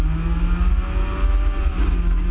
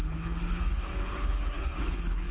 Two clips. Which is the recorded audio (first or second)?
first